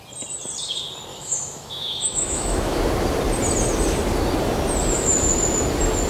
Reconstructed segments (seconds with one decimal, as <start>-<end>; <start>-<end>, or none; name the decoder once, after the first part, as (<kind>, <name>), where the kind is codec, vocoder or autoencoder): 1.1-2.8 (autoencoder, DAC-VAE)